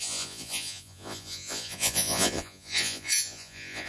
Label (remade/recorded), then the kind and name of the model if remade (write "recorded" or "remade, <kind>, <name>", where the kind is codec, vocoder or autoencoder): remade, vocoder, Vocos